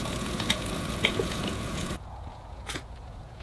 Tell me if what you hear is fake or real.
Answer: fake